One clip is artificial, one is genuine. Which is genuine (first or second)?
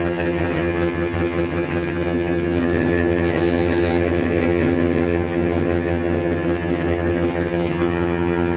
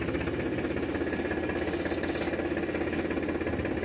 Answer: second